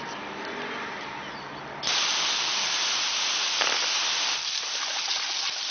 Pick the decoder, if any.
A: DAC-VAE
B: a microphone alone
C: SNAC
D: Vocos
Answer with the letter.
B